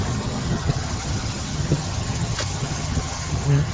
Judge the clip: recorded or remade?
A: remade